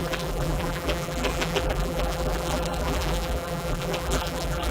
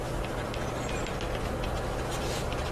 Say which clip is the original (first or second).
second